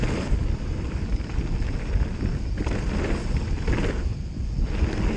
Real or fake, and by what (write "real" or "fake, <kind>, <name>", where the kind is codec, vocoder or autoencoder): real